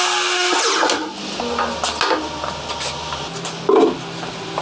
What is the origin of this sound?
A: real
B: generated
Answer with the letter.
A